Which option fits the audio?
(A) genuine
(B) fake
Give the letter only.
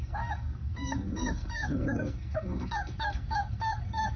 B